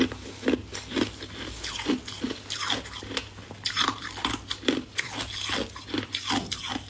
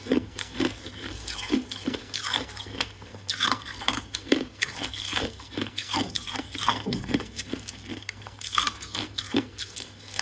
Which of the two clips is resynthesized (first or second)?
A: second